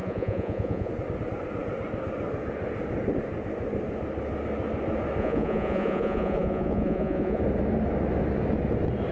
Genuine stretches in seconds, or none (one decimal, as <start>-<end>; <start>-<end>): 0.9-5.2; 7.4-9.1